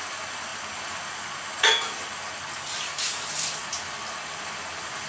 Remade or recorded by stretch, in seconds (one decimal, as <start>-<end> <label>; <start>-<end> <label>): 0.0-5.1 recorded